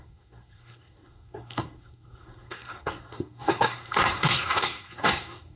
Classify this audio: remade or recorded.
remade